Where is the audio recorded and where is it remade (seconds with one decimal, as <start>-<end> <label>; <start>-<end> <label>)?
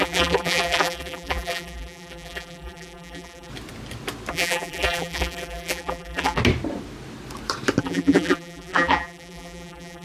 0.0-3.5 remade; 3.5-4.3 recorded; 4.3-6.4 remade; 6.4-7.8 recorded; 7.8-10.0 remade